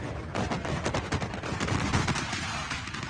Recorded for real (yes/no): yes